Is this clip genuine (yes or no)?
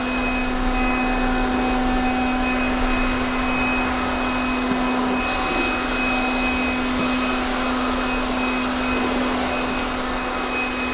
yes